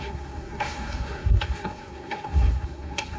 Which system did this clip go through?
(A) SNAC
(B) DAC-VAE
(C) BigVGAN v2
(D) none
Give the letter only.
A